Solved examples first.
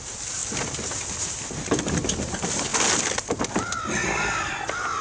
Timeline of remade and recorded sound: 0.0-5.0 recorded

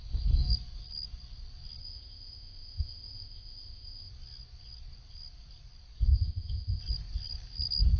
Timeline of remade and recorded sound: 0.0-1.8 recorded; 1.8-4.1 remade; 4.1-6.1 recorded; 6.1-6.8 remade; 6.8-8.0 recorded

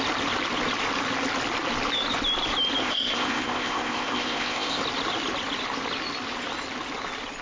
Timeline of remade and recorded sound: 0.0-2.8 recorded; 2.8-4.8 remade; 4.8-7.4 recorded

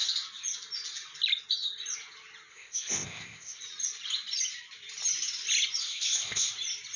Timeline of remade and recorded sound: 0.0-2.5 recorded; 2.5-3.6 remade; 3.6-5.8 recorded; 5.8-6.5 remade; 6.5-7.0 recorded

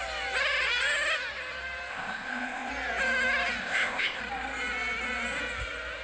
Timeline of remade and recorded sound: 0.0-1.9 recorded; 1.9-2.7 remade; 2.7-3.6 recorded; 3.6-4.2 remade; 4.2-6.0 recorded

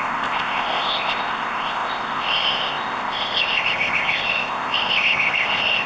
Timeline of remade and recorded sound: 0.0-5.9 remade